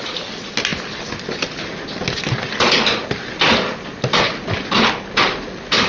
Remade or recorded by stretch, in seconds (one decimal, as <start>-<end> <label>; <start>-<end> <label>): 0.0-5.9 recorded